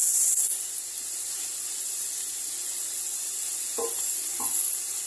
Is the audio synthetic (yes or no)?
no